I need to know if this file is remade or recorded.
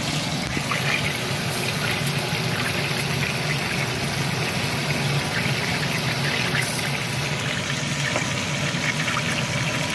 recorded